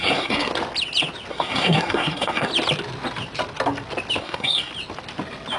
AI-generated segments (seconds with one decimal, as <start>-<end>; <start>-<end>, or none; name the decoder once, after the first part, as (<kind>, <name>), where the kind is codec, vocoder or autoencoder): 0.0-0.5 (codec, SNAC); 1.3-2.5; 4.2-4.7